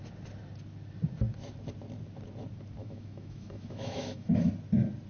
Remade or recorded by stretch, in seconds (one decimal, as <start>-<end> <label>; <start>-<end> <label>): 0.0-2.8 recorded; 2.8-4.5 remade; 4.5-5.1 recorded